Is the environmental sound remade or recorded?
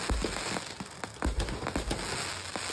recorded